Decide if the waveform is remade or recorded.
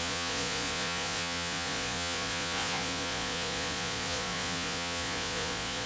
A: remade